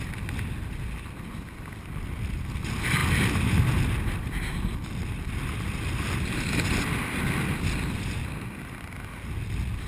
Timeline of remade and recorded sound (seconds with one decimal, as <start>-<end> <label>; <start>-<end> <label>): 0.0-9.9 recorded